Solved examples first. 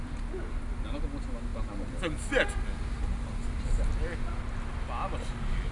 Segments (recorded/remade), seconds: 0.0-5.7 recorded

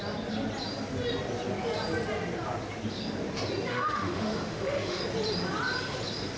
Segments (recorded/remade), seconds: 0.0-3.7 recorded; 3.7-5.0 remade; 5.0-6.4 recorded

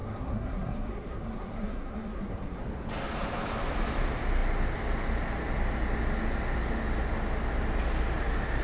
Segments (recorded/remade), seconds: 0.0-2.6 remade; 2.6-8.6 recorded

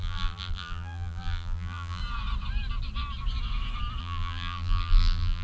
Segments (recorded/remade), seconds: 0.0-2.0 remade; 2.0-4.0 recorded; 4.0-5.4 remade

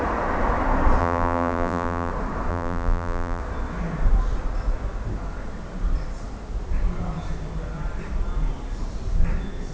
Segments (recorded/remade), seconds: 0.0-1.0 recorded; 1.0-2.1 remade; 2.1-2.5 recorded; 2.5-3.4 remade; 3.4-9.7 recorded